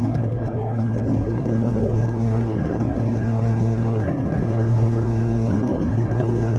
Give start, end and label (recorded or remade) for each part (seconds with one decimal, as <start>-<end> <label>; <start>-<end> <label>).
0.0-6.6 remade